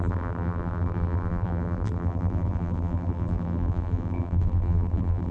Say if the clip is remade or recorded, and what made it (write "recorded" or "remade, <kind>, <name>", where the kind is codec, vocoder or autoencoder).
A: remade, vocoder, BigVGAN v2